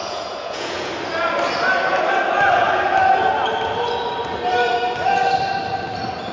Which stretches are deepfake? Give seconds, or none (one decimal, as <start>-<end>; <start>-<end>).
0.0-0.9